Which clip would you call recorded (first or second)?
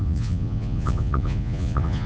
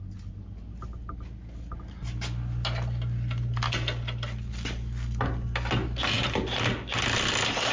second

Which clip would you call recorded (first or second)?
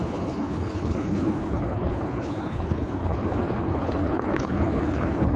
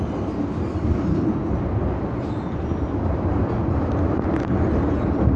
second